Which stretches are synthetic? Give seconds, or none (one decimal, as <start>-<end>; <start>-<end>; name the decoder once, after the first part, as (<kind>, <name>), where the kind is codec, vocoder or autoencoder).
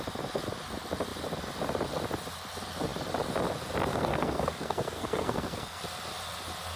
3.9-5.8 (codec, SNAC)